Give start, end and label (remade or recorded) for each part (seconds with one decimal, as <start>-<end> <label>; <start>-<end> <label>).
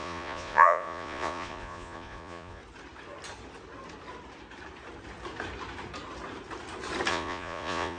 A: 0.0-2.6 remade; 2.6-7.1 recorded; 7.1-8.0 remade